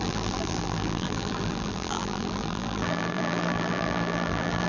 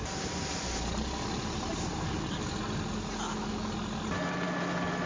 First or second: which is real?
second